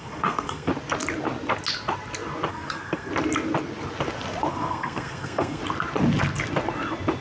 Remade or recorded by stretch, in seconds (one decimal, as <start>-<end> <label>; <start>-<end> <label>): 0.0-0.7 remade; 0.7-2.5 recorded; 2.5-3.1 remade; 3.1-4.5 recorded; 4.5-5.6 remade; 5.6-7.2 recorded

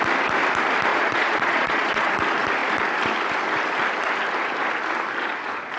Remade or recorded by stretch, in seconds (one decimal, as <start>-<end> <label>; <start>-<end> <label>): 0.0-0.9 recorded; 0.9-2.1 remade; 2.1-5.8 recorded

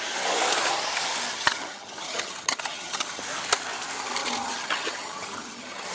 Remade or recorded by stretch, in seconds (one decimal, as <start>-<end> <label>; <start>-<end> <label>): 0.0-1.3 recorded; 1.3-3.2 remade; 3.2-4.2 recorded; 4.2-5.9 remade

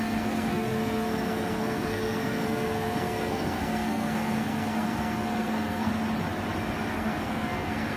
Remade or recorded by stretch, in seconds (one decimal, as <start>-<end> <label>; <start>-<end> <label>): 0.0-5.9 remade; 5.9-6.9 recorded; 6.9-8.0 remade

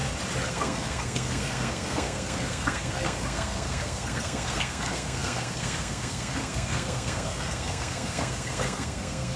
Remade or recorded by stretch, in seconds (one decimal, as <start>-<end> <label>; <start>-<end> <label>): 0.0-0.5 recorded; 0.5-9.4 remade